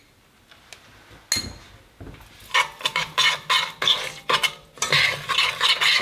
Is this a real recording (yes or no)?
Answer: yes